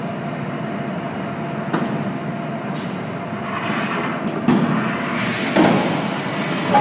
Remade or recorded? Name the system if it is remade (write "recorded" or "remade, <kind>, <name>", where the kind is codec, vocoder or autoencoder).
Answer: recorded